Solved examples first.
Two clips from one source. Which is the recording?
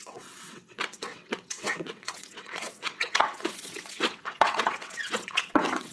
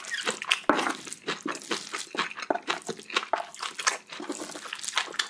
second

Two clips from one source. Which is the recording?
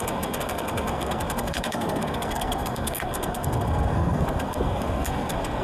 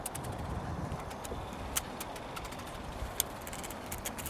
second